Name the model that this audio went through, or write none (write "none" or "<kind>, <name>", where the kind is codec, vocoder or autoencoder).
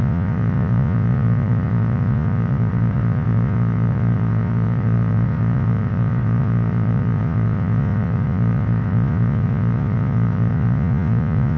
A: vocoder, Vocos